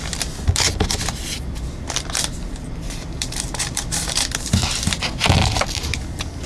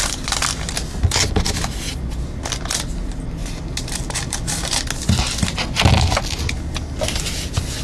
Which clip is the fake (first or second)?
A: first